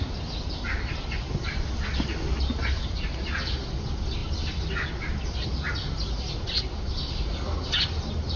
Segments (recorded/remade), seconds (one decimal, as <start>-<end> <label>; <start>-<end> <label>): 0.0-8.4 recorded